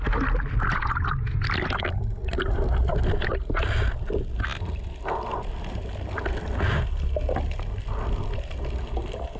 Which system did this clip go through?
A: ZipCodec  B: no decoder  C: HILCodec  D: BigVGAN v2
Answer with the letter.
B